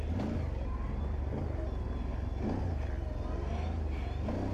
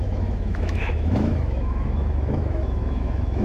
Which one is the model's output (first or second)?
second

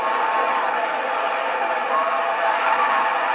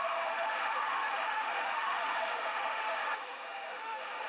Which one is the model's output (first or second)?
second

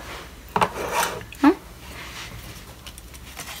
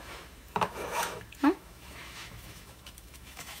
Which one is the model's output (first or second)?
second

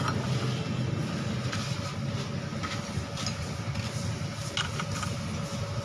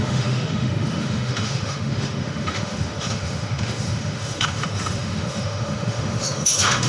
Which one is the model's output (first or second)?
second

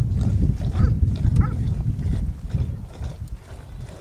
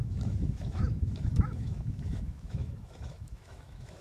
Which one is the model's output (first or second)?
second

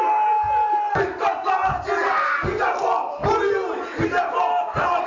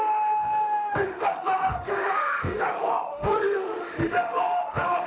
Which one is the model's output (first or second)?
second